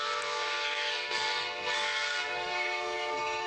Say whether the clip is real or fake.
fake